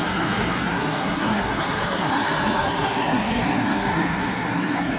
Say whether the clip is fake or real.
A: fake